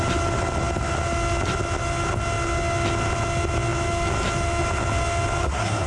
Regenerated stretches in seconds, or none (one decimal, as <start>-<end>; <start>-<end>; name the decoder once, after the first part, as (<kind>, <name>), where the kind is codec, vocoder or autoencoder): 5.4-5.9 (codec, SNAC)